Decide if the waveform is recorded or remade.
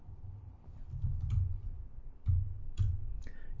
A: remade